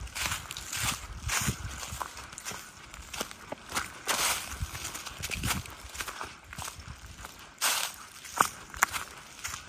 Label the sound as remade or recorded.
recorded